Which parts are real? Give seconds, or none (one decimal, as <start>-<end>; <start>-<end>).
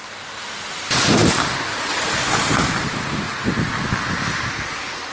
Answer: 0.0-5.1